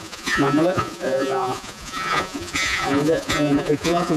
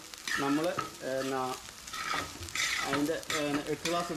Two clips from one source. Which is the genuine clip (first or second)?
second